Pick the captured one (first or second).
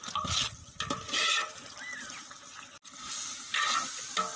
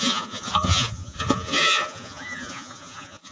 first